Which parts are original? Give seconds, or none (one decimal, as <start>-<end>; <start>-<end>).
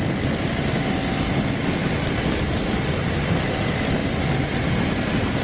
0.0-5.4